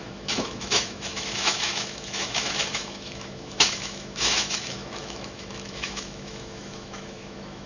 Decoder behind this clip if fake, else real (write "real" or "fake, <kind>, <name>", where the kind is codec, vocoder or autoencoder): fake, autoencoder, DAC-VAE